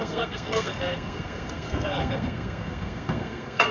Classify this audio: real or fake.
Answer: fake